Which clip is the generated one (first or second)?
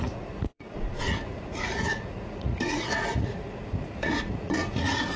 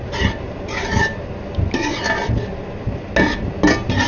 first